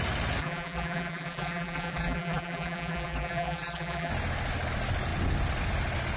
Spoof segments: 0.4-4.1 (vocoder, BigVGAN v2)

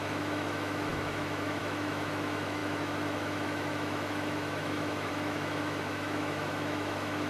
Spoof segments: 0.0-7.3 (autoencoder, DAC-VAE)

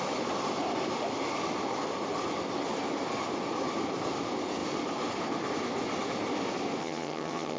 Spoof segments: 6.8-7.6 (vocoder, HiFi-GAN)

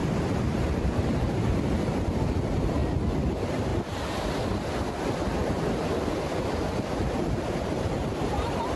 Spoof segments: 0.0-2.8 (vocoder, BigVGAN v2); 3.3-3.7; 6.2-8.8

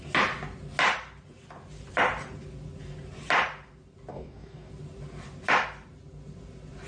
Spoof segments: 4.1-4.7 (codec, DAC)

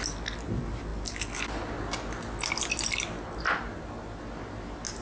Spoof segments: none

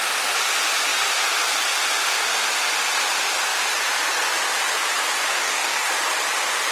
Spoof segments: 5.3-5.9 (codec, DAC)